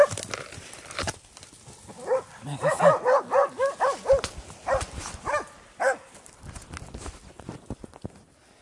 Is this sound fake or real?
real